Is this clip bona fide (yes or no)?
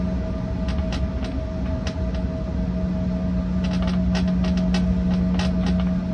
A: yes